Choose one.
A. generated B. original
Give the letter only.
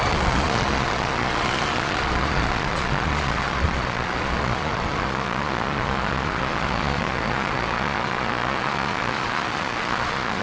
A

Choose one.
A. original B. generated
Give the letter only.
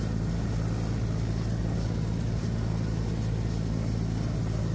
A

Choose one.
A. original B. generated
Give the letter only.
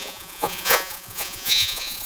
B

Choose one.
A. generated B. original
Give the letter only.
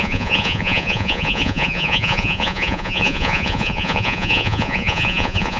A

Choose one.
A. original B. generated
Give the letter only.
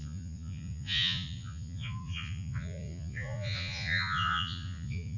B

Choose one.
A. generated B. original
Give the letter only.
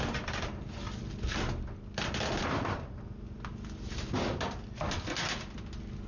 B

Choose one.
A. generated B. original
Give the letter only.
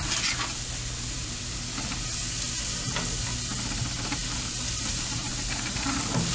B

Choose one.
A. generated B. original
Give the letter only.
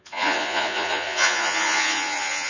A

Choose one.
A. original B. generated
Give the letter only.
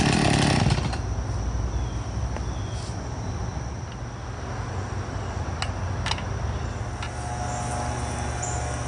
A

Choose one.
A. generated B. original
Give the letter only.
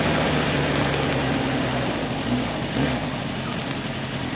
B